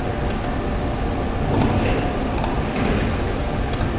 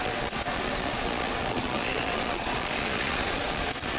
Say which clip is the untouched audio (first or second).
first